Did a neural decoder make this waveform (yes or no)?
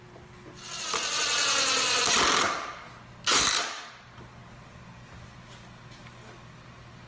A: no